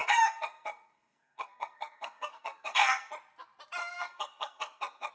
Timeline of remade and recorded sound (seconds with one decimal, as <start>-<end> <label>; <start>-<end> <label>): 0.0-3.1 remade; 3.1-3.8 recorded; 3.8-5.1 remade